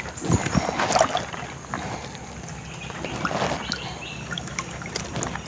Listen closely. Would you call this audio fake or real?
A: real